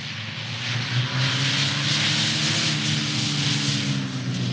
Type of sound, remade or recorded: recorded